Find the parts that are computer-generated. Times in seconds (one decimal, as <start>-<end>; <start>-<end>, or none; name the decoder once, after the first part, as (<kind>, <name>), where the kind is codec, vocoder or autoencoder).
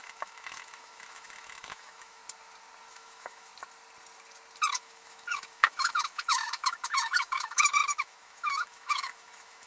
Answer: 0.0-2.2 (autoencoder, DAC-VAE); 2.9-3.5; 4.7-9.7